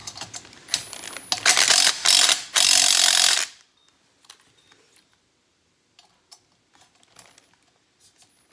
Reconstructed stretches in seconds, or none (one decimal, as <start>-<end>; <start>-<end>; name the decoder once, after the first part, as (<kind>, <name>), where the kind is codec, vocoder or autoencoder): none